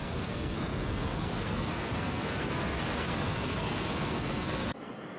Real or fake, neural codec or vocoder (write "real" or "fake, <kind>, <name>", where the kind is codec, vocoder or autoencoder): fake, codec, SNAC